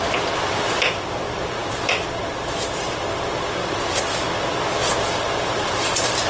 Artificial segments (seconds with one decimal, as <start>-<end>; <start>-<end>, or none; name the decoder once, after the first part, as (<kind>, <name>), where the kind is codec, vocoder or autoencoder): none